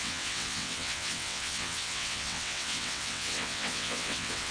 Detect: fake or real fake